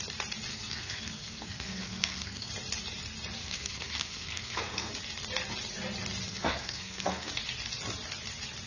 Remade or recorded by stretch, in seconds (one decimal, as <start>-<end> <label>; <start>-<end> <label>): 0.0-0.5 recorded; 0.5-2.5 remade; 2.5-3.4 recorded; 3.4-4.9 remade; 4.9-6.3 recorded; 6.3-7.3 remade; 7.3-8.7 recorded